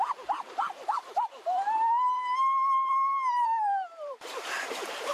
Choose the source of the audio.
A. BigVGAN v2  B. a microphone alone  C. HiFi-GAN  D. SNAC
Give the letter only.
A